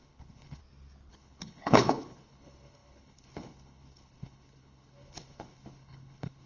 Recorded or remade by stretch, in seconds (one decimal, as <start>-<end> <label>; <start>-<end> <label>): 0.0-0.6 remade; 0.6-1.1 recorded; 1.1-6.5 remade